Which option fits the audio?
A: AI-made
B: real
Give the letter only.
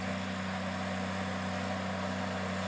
B